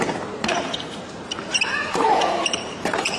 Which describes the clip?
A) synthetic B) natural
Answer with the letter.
A